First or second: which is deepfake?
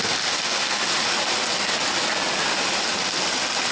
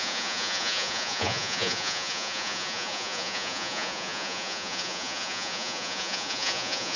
second